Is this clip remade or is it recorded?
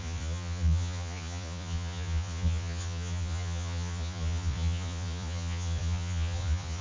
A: remade